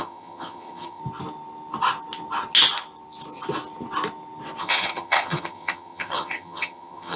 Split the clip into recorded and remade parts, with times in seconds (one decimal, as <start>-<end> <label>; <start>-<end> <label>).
0.0-1.0 remade; 1.0-4.6 recorded; 4.6-7.2 remade